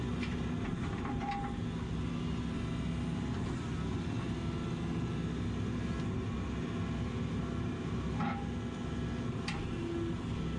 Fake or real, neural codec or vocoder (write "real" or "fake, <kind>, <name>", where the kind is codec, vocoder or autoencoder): real